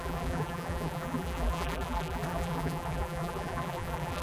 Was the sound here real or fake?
fake